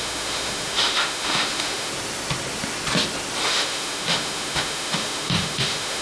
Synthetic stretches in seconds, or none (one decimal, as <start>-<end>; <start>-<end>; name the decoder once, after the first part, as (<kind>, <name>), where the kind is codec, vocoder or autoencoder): 0.0-1.9 (autoencoder, DAC-VAE); 3.4-6.0